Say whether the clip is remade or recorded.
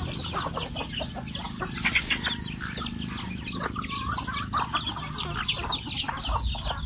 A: recorded